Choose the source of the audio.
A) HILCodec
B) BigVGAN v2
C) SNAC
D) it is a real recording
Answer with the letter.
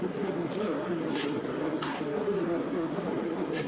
C